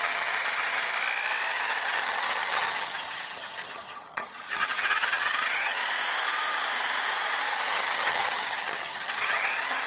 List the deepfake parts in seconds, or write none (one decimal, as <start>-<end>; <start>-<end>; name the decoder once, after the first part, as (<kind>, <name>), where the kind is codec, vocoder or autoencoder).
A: 0.0-0.8 (vocoder, HiFi-GAN); 1.5-5.8; 7.7-9.9